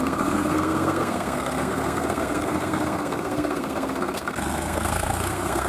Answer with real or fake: fake